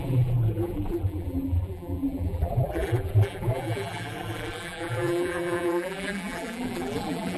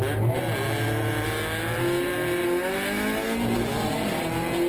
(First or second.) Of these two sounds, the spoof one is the first